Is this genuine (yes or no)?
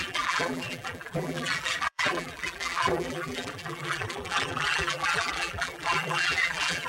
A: no